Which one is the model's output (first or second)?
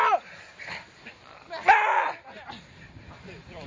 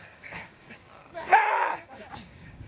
second